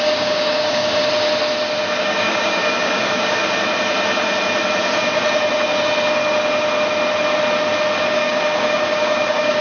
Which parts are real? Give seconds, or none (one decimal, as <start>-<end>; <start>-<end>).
1.0-2.0; 3.4-8.0